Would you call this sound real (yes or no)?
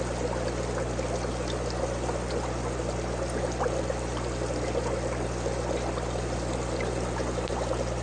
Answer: no